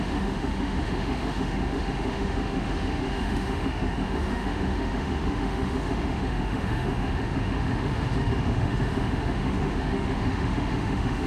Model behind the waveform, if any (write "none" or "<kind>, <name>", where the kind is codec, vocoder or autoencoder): autoencoder, DAC-VAE